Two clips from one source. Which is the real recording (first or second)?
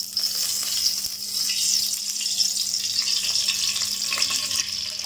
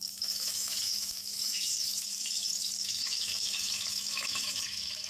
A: first